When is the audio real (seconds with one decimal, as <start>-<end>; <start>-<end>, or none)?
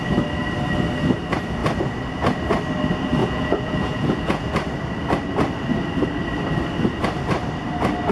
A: 0.0-3.2; 4.4-8.1